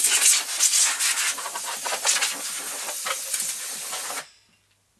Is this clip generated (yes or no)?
no